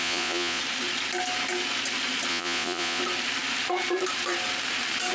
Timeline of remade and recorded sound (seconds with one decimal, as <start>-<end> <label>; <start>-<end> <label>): 0.0-0.6 remade; 0.6-2.3 recorded; 2.3-3.0 remade; 3.0-5.1 recorded